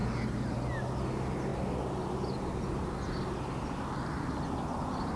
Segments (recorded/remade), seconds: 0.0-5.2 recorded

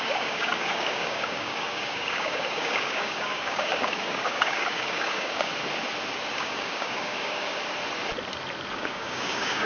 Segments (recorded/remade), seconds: 0.0-5.5 remade; 5.5-6.3 recorded; 6.3-7.6 remade; 7.6-8.7 recorded; 8.7-9.7 remade

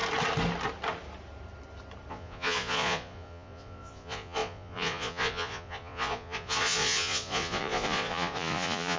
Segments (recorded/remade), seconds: 0.0-2.1 recorded; 2.1-9.0 remade

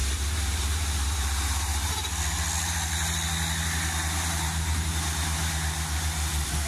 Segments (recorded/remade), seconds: 0.0-2.0 remade; 2.0-6.7 recorded

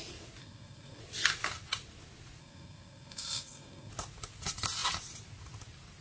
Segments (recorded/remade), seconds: 0.0-0.4 recorded; 0.4-1.0 remade; 1.0-2.4 recorded; 2.4-3.9 remade; 3.9-6.0 recorded

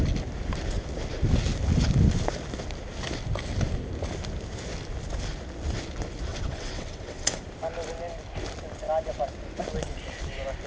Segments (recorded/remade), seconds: 0.0-6.3 recorded; 6.3-7.4 remade; 7.4-10.7 recorded